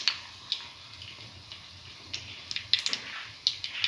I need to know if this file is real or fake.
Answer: real